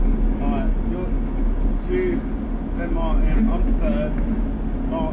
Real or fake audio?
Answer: real